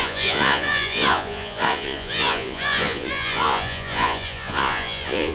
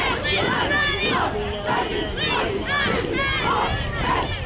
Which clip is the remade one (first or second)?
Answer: first